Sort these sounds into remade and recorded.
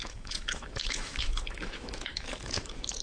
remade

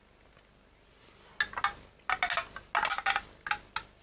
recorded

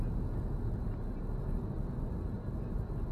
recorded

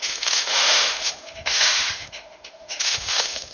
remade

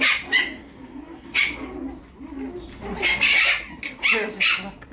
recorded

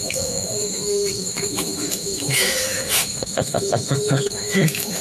remade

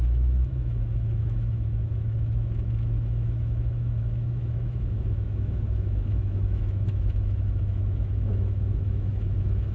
remade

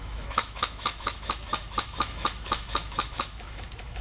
remade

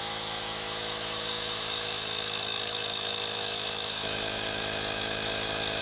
remade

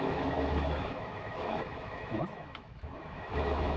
remade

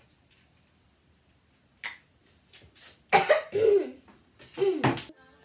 recorded